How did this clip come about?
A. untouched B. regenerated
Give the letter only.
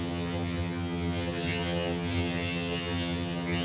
B